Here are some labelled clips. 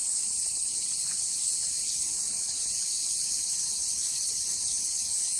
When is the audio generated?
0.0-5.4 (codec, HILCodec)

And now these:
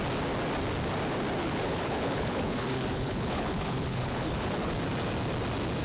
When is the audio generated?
1.4-4.7 (codec, HILCodec)

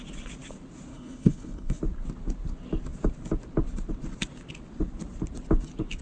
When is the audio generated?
0.9-1.8 (codec, HILCodec)